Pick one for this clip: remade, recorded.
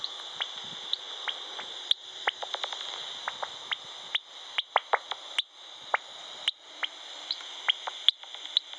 recorded